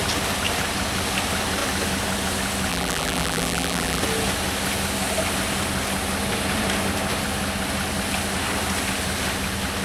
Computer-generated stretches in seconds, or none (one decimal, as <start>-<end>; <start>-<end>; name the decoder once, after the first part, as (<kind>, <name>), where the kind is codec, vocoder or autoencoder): 2.7-4.0 (vocoder, BigVGAN v2)